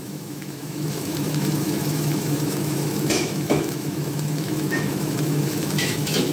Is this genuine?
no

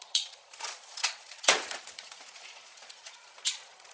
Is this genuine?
no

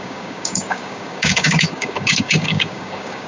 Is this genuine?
no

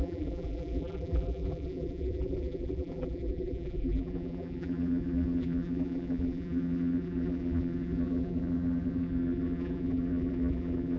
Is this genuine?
no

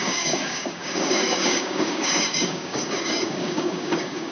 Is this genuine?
no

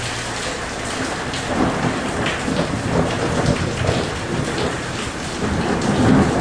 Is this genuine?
no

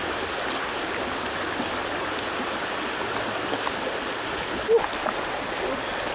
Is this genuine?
yes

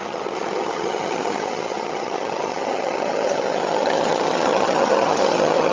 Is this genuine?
no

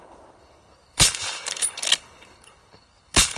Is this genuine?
no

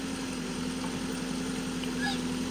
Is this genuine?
yes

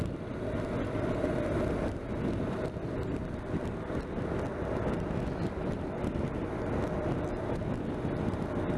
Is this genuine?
yes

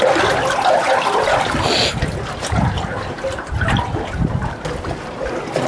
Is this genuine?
yes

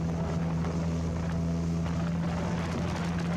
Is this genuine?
yes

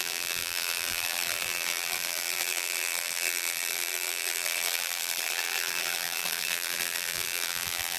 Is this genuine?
no